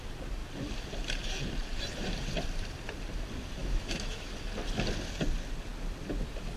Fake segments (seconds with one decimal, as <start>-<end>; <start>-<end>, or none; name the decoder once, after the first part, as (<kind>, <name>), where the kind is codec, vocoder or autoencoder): 3.6-4.3 (autoencoder, DAC-VAE)